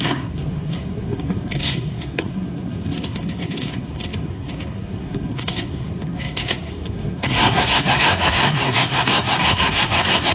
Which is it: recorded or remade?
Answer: remade